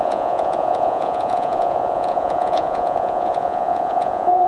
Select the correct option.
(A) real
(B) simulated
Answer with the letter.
B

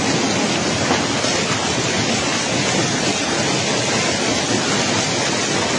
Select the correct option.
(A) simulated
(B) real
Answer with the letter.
B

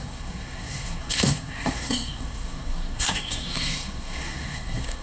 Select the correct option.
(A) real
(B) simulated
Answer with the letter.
B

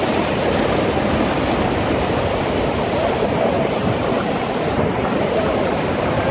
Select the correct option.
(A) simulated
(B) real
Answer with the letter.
B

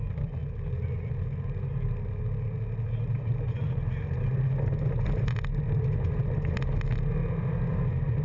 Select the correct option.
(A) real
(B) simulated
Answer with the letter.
A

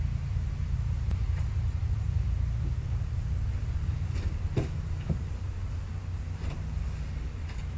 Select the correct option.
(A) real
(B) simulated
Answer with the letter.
B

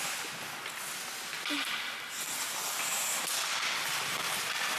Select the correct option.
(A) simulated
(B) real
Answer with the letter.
B